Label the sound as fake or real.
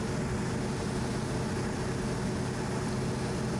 real